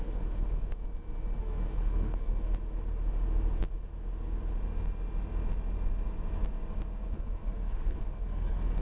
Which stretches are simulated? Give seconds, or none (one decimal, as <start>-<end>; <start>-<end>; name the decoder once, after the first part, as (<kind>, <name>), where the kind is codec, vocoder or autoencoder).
0.0-0.8 (codec, SNAC); 1.4-2.5; 7.1-8.8